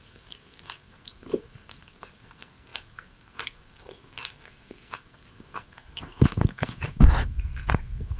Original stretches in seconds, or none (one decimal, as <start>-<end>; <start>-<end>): none